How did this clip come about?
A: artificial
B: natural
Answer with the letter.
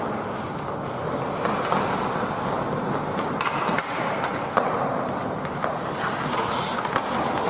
B